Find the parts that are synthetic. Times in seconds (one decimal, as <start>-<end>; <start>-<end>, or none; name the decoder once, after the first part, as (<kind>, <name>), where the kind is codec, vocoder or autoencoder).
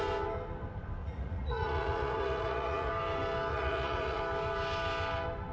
1.0-2.9 (vocoder, Vocos); 3.5-4.2